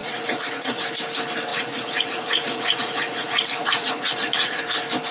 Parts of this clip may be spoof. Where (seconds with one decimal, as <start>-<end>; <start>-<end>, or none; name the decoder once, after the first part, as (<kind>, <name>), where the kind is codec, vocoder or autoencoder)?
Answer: 0.0-0.8 (vocoder, Vocos); 1.5-4.6